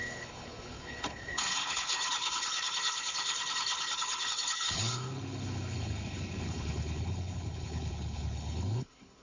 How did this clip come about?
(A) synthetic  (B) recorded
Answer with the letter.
A